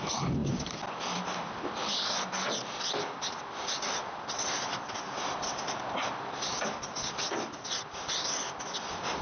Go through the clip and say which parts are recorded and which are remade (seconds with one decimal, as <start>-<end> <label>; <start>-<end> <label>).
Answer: 0.0-9.2 recorded